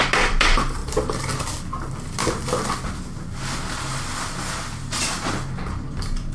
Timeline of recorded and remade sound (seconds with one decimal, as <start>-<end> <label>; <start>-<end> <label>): 0.0-6.3 recorded